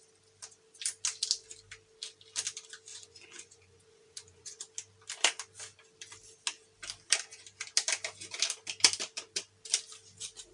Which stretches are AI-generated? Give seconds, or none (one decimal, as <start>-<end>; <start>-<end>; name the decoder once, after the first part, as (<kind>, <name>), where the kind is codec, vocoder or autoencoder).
2.9-4.6 (vocoder, Vocos)